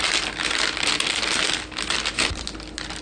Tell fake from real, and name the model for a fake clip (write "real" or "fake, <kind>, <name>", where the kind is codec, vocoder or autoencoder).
real